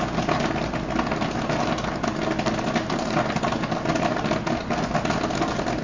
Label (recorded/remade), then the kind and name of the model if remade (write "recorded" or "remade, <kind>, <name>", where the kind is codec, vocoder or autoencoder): recorded